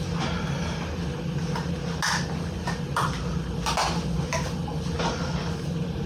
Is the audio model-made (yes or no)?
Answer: no